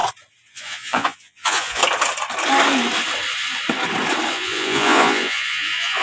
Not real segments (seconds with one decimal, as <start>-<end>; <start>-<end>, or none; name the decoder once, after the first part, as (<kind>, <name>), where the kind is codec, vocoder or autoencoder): 0.5-1.8 (vocoder, Vocos); 4.3-6.0